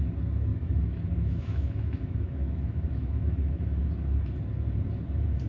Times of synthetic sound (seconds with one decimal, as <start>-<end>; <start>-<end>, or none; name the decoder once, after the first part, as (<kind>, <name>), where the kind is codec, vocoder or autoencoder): 0.5-3.8 (autoencoder, DAC-VAE)